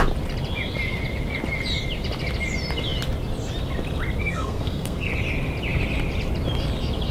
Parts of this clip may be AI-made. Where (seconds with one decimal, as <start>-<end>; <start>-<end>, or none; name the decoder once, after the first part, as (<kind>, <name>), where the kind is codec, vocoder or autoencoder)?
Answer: 4.2-5.1 (codec, SNAC)